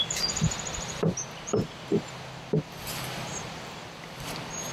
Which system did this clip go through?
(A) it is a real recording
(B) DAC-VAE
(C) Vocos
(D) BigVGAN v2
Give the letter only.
A